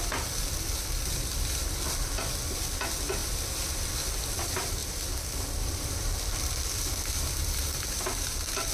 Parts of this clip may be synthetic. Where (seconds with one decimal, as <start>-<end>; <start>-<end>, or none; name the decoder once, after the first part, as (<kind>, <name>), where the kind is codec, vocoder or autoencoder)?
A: 4.8-8.7 (vocoder, BigVGAN v2)